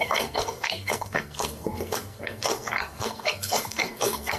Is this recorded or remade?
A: remade